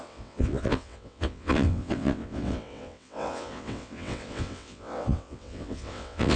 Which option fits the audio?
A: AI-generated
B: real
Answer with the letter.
A